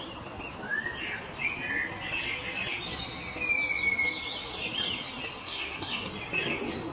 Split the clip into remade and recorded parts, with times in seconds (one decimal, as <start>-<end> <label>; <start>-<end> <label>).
0.0-5.4 recorded; 5.4-6.1 remade; 6.1-6.9 recorded